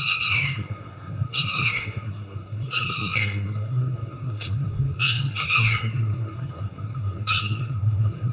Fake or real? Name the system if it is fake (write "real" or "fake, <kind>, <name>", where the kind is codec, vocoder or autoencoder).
fake, codec, SNAC